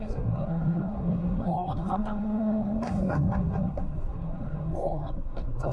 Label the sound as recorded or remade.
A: remade